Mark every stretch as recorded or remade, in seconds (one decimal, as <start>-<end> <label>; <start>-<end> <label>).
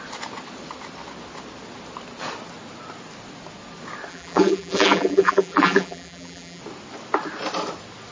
0.0-4.1 recorded; 4.1-6.6 remade; 6.6-8.1 recorded